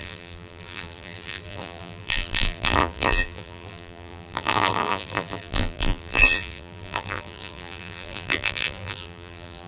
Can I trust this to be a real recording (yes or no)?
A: no